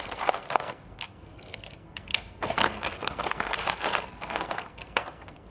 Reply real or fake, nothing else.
fake